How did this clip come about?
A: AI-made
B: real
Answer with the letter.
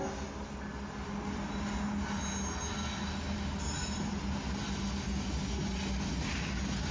B